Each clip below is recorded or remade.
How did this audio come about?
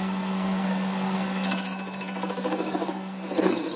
remade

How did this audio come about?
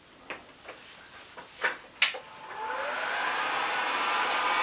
recorded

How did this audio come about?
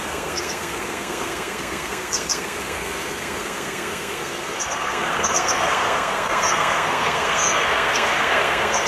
remade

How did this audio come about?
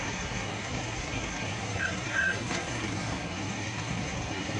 remade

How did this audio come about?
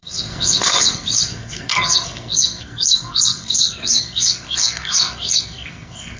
remade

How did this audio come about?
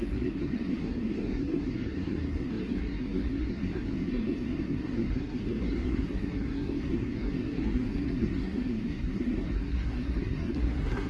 remade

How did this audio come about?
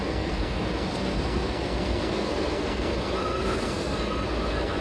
remade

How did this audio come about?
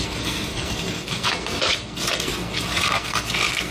remade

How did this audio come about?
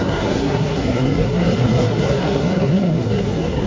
remade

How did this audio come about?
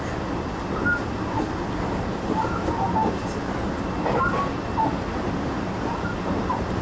recorded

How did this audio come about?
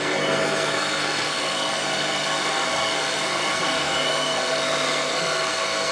remade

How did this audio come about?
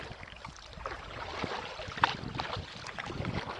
recorded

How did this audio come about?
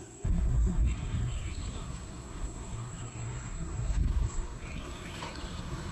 remade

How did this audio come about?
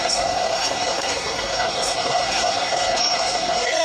remade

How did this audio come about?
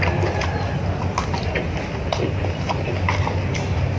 recorded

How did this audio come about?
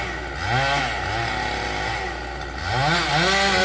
recorded